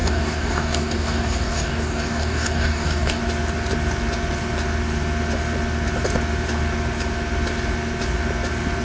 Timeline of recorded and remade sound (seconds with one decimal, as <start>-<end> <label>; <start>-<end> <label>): 0.0-3.2 remade; 3.2-8.8 recorded